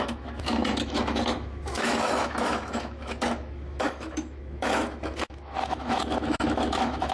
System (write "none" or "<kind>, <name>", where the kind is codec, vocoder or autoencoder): autoencoder, DAC-VAE